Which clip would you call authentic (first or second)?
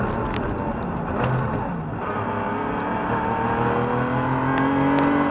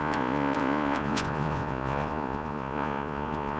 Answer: first